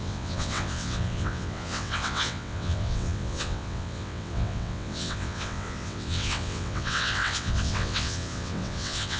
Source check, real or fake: fake